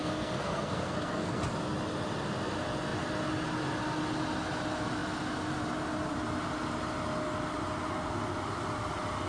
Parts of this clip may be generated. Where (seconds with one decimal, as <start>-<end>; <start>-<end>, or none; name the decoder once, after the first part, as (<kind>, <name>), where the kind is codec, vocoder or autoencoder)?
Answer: 0.0-1.4 (codec, SNAC)